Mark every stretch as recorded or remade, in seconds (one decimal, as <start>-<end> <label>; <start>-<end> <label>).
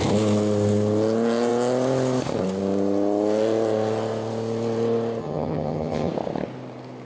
0.0-5.2 recorded; 5.2-6.1 remade; 6.1-7.0 recorded